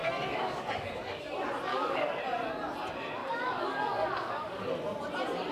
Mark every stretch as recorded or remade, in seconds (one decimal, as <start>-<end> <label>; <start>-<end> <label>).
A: 0.0-1.2 remade; 1.2-1.7 recorded; 1.7-2.2 remade; 2.2-3.2 recorded; 3.2-4.6 remade; 4.6-5.5 recorded